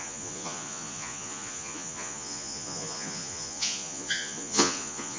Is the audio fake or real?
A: fake